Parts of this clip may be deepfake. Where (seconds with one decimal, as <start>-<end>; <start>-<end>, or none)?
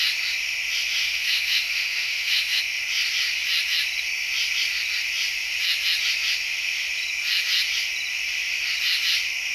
1.0-2.6